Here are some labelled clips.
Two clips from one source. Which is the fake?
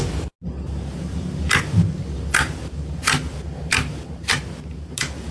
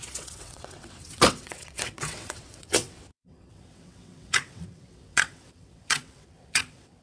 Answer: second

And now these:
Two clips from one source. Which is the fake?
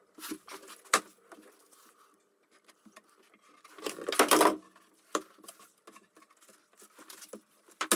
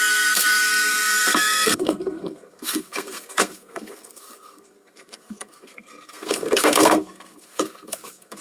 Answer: second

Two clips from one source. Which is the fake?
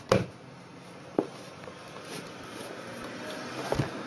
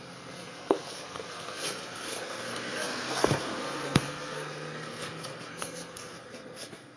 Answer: second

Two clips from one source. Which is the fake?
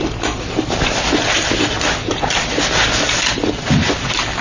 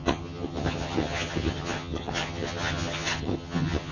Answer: second